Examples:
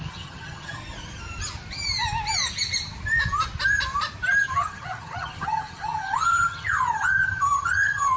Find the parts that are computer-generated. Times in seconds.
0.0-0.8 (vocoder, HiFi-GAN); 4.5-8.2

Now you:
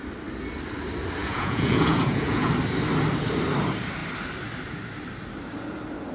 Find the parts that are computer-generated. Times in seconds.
1.2-2.5 (vocoder, Vocos)

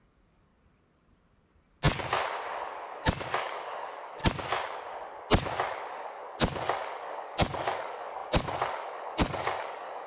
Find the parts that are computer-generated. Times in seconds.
0.0-0.5 (codec, DAC); 3.0-4.2; 5.9-10.1

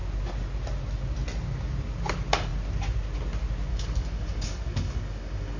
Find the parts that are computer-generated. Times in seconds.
3.7-5.6 (codec, DAC)

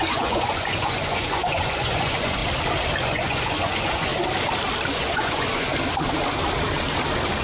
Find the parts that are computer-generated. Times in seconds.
0.0-2.4 (vocoder, Vocos); 3.0-4.1; 4.9-5.7

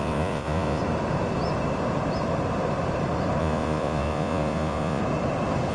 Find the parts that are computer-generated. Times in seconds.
0.0-0.8 (vocoder, Vocos); 3.4-5.0

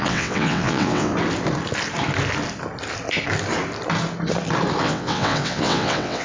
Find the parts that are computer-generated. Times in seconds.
0.0-1.1 (vocoder, WaveNeXt); 4.8-6.2